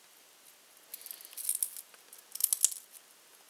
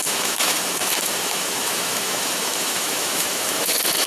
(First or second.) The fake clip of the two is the second